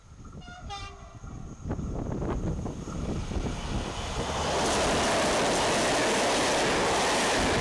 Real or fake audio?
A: real